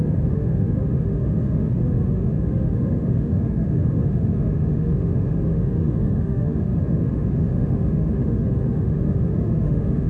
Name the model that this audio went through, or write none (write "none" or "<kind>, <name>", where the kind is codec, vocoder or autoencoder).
autoencoder, DAC-VAE